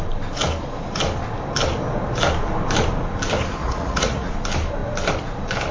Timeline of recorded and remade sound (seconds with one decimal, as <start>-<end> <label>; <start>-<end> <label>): 0.0-3.6 recorded; 3.6-4.3 remade; 4.3-5.7 recorded